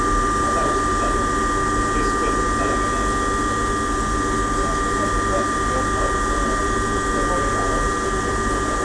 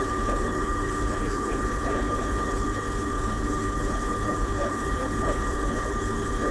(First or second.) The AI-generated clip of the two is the second